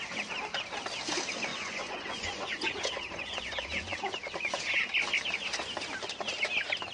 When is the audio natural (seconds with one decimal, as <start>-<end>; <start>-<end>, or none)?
0.0-1.5; 4.8-6.9